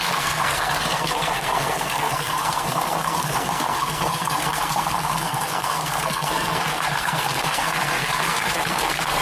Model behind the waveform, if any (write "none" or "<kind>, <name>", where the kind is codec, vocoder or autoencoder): codec, SNAC